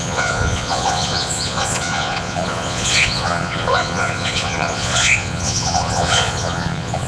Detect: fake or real fake